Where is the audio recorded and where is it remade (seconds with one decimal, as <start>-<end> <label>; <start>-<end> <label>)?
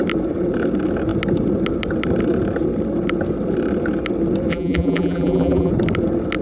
0.0-4.5 recorded; 4.5-5.7 remade; 5.7-6.4 recorded